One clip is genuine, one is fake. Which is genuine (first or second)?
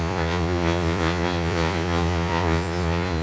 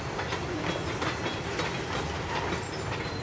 second